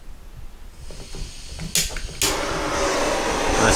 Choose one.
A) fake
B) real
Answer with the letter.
B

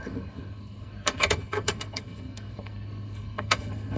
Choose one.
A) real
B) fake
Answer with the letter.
B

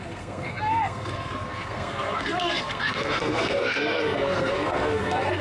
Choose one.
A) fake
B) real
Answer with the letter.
A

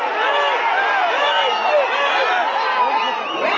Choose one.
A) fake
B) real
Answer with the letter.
B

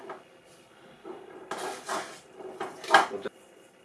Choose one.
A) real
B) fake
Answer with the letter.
A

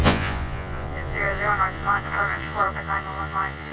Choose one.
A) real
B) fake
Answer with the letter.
B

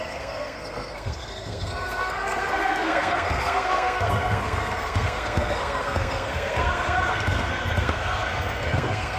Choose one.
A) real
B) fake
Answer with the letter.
B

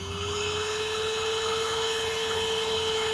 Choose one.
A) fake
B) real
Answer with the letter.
A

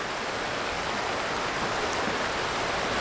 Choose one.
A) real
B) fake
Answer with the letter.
A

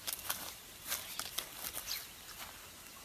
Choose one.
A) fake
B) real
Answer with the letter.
B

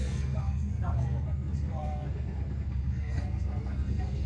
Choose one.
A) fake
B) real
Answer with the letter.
A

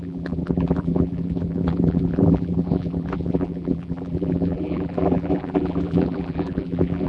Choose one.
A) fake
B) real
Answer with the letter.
A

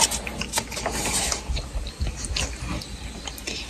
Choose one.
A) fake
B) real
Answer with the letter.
B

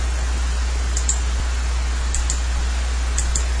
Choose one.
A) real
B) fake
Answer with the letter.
A